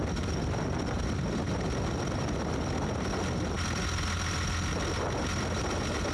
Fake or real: real